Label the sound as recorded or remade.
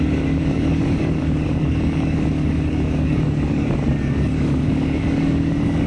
remade